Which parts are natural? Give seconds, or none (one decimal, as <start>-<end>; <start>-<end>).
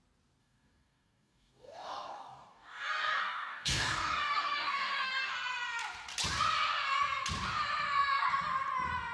0.0-0.4; 5.3-9.1